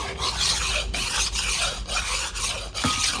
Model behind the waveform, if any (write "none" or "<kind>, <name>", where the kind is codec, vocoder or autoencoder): none